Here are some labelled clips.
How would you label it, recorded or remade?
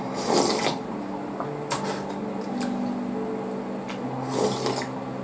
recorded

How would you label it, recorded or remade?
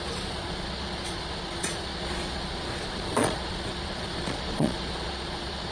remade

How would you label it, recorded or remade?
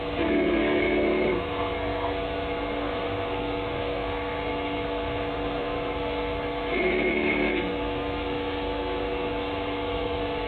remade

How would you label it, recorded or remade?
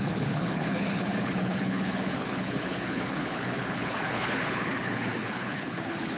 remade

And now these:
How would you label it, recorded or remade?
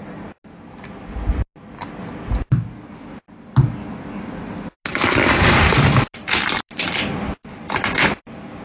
recorded